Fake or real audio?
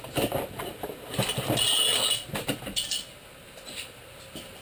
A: real